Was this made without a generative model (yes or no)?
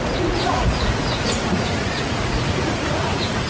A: no